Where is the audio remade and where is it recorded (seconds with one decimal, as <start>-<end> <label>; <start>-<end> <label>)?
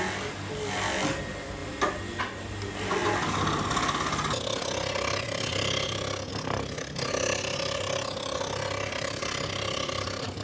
0.0-10.4 recorded